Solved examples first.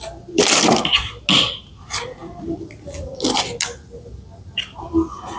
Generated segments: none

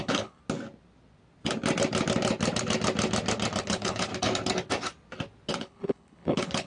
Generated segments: 0.0-0.4; 3.6-4.1; 5.5-6.7

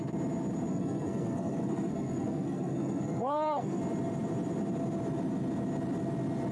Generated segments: 0.7-3.8

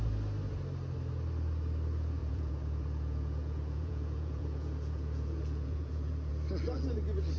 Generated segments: 2.2-6.3

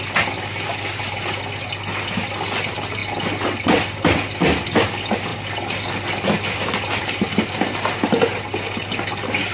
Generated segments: none